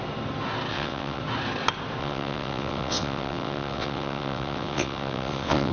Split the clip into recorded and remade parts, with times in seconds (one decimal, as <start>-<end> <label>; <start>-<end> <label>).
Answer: 0.0-0.7 recorded; 0.7-1.2 remade; 1.2-2.0 recorded; 2.0-5.7 remade